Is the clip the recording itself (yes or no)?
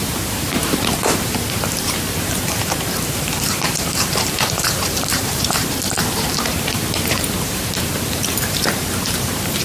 no